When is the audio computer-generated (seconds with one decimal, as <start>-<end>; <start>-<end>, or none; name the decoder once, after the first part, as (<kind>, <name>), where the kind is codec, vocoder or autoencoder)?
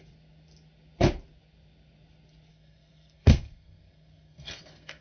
2.5-5.0 (codec, SNAC)